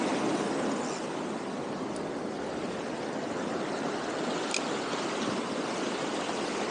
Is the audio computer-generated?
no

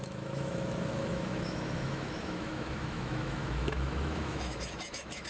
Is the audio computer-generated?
yes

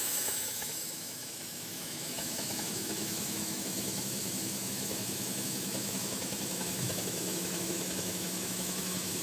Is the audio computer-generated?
yes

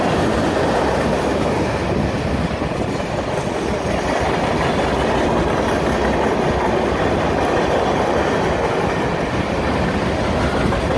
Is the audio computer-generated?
no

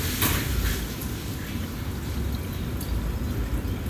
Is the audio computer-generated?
no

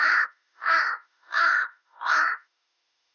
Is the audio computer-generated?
yes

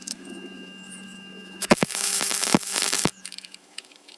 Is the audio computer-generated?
yes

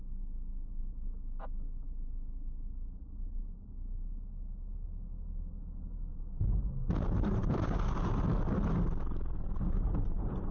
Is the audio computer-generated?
no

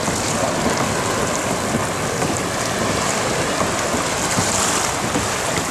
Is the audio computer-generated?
no